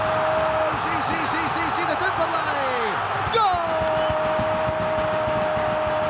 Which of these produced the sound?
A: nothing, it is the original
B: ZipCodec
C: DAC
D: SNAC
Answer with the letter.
A